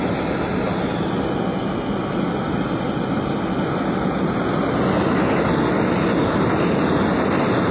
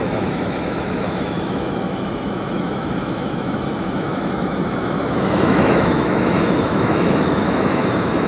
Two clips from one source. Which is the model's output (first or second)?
second